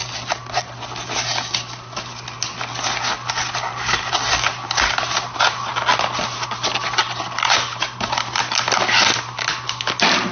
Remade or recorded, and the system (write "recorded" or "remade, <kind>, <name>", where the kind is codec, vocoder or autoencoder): recorded